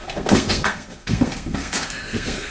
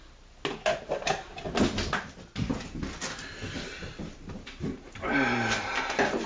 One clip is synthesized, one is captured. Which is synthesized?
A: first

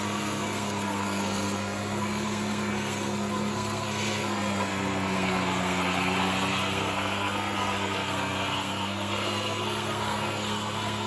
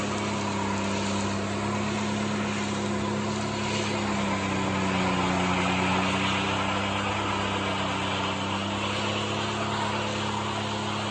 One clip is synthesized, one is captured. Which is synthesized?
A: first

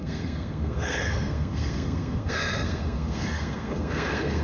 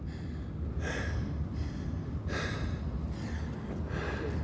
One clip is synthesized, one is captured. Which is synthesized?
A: first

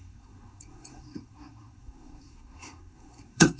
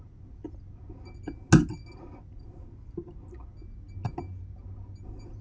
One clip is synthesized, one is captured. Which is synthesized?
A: first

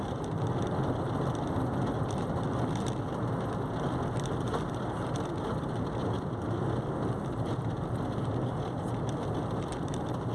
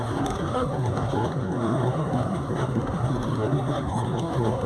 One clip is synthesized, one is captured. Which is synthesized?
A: second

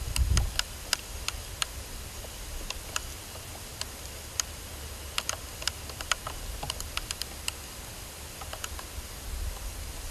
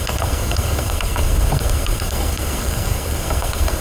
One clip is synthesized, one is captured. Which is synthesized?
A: second